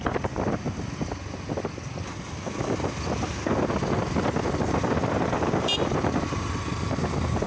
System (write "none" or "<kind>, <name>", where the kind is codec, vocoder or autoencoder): none